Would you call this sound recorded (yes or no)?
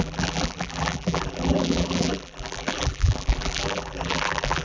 no